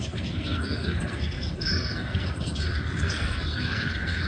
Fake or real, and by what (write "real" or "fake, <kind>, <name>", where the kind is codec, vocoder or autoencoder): fake, codec, SNAC